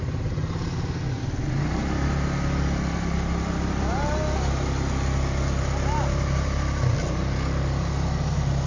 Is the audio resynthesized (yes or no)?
no